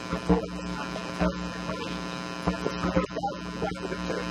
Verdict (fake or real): real